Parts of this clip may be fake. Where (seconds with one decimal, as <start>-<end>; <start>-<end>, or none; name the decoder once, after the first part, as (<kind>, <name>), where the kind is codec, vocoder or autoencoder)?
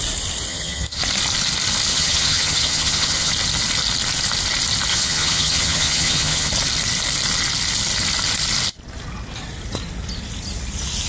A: 0.5-1.0 (vocoder, HiFi-GAN); 1.9-3.3; 4.9-6.5